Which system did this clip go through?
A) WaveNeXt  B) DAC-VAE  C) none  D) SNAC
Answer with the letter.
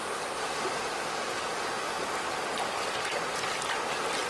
C